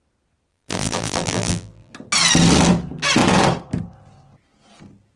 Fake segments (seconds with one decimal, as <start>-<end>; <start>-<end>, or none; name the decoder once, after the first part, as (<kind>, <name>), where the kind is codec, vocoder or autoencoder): 0.5-1.9 (vocoder, BigVGAN v2)